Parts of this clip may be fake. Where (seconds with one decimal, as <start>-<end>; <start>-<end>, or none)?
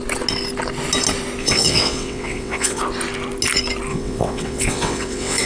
1.4-2.8; 3.9-5.5